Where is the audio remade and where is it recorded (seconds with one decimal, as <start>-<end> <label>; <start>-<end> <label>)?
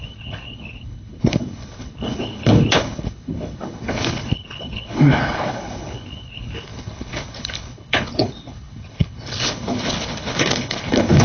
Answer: 0.0-11.2 remade